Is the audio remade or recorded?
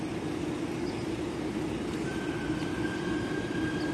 remade